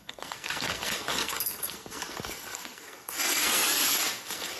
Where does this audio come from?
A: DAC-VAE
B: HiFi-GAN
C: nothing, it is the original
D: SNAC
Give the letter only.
D